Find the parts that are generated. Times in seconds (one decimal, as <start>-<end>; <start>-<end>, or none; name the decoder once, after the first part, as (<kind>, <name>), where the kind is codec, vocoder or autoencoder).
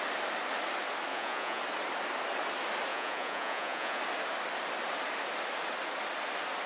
1.1-1.6 (vocoder, Vocos); 2.9-4.0